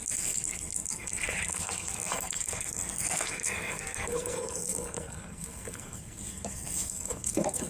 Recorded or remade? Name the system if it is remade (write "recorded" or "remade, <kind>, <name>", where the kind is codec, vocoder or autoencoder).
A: remade, codec, SNAC